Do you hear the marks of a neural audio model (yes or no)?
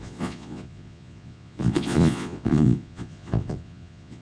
yes